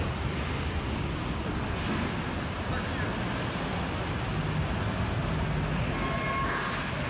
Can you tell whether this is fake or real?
real